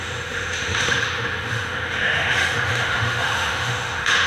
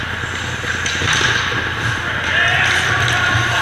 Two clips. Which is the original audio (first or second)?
second